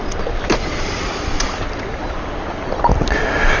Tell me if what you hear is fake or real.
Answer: real